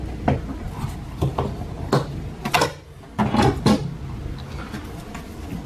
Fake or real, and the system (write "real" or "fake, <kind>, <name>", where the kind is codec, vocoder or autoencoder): real